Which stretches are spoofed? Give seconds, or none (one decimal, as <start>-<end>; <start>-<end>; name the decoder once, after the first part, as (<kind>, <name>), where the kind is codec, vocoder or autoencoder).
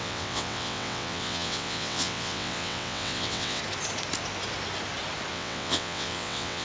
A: 0.0-3.6 (vocoder, WaveNeXt); 5.3-6.6